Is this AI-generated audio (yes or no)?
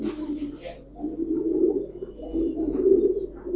no